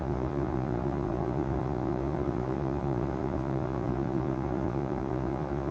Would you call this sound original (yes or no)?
no